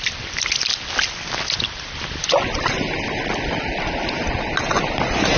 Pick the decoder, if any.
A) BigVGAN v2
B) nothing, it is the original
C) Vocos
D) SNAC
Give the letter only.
B